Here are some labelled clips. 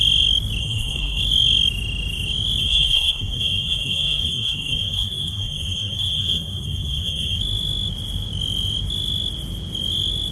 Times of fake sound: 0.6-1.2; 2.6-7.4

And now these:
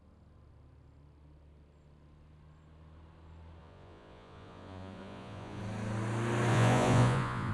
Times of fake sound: 3.6-5.6; 6.5-7.5

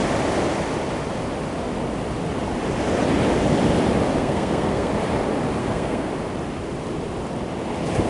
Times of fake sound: 4.2-4.9; 5.6-6.1

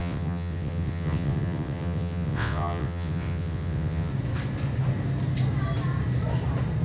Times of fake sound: 0.0-4.1

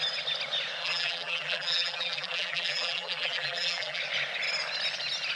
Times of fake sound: 0.8-4.0

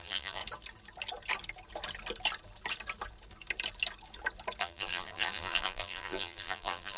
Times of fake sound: 0.0-0.4; 4.6-7.0